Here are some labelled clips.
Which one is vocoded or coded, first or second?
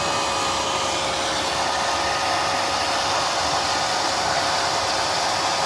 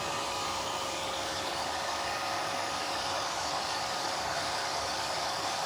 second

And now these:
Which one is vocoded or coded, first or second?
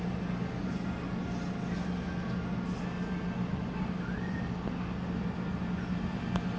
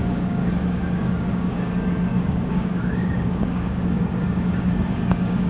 second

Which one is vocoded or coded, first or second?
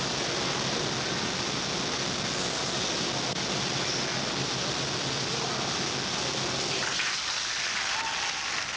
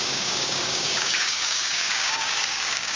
second